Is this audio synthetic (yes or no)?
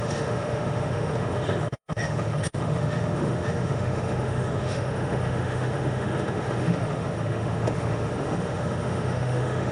yes